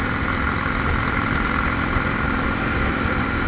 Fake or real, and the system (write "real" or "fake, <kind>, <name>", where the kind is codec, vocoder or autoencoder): real